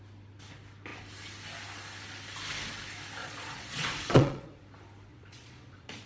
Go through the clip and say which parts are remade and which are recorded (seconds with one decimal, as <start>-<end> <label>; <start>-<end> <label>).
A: 0.0-3.2 recorded; 3.2-4.6 remade; 4.6-5.1 recorded; 5.1-6.1 remade